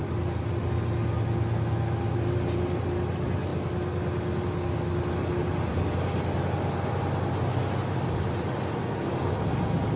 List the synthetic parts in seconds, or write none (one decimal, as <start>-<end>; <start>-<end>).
none